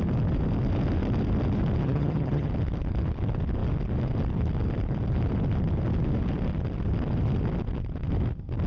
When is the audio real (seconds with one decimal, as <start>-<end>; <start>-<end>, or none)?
0.0-1.8; 2.5-8.7